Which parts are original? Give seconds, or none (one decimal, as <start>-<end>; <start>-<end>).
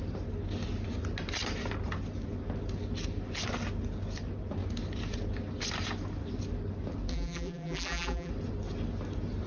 0.0-7.1; 8.3-9.5